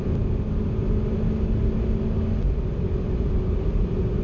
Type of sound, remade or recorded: recorded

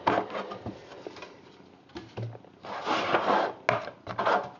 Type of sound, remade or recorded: recorded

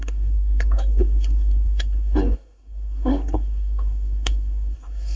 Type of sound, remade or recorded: remade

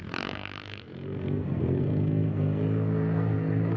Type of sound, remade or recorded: remade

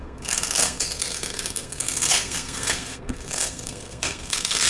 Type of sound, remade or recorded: remade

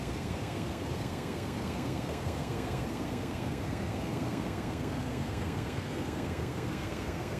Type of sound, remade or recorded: remade